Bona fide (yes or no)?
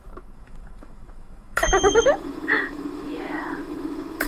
no